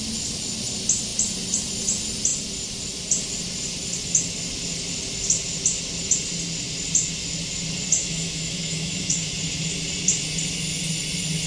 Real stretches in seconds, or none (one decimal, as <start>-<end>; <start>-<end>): 0.0-8.0; 9.3-11.5